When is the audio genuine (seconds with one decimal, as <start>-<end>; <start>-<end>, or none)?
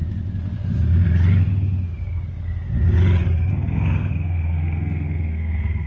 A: 0.0-3.5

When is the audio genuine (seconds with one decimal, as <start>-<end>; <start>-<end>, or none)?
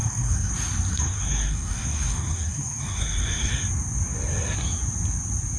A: 0.5-0.9; 3.5-5.6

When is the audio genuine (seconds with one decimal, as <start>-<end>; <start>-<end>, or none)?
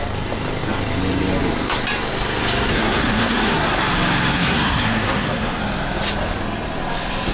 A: 0.0-2.7; 3.7-4.3; 5.6-7.3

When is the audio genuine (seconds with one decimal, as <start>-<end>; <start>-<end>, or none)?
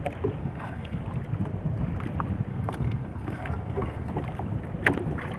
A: 0.0-0.4; 1.0-2.5; 4.1-5.4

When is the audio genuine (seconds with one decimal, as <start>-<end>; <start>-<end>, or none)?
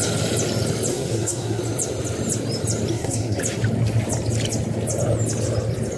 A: 0.0-0.9; 1.6-2.9; 3.4-6.0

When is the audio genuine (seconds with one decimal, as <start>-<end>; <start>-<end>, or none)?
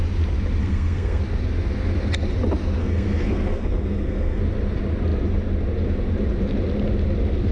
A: 0.0-0.6; 1.2-2.8; 4.4-7.5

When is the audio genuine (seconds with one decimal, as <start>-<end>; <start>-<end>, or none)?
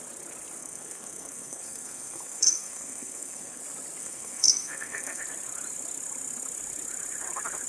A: 0.0-0.6; 3.6-4.0; 5.2-7.7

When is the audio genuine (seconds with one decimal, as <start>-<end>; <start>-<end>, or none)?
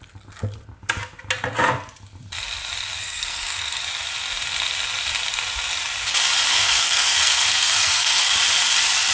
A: 0.0-3.0; 3.8-6.5; 8.2-9.1